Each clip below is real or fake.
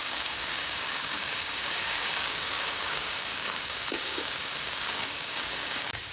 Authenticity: fake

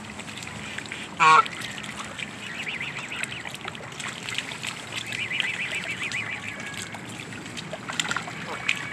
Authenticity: real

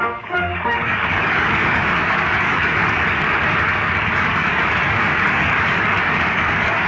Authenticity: fake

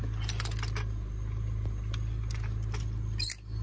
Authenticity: real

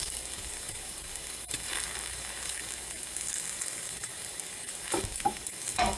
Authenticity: fake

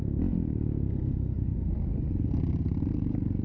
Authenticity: real